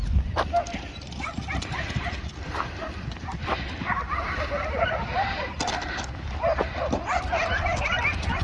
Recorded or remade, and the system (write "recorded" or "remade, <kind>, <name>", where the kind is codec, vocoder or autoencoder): recorded